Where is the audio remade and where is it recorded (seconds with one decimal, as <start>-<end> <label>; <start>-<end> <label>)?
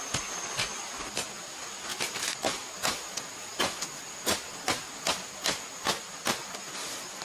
0.0-7.2 recorded